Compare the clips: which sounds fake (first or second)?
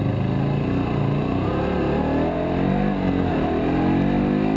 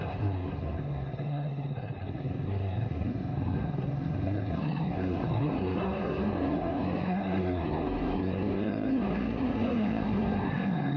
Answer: second